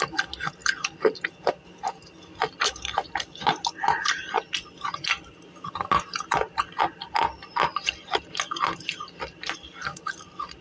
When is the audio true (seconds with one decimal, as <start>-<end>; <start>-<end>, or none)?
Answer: 0.0-10.6